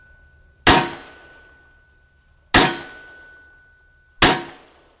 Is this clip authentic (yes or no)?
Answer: yes